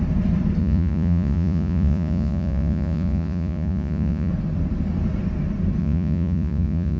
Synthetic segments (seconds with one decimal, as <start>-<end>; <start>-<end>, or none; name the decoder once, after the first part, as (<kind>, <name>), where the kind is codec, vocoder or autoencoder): 0.6-4.3 (vocoder, Vocos); 5.8-7.0